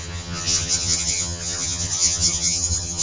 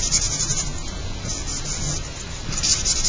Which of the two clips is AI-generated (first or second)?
first